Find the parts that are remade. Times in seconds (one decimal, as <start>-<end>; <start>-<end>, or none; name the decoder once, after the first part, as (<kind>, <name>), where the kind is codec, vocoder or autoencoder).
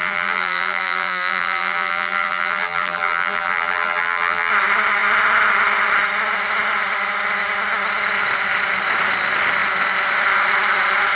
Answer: 0.0-4.5 (vocoder, BigVGAN v2)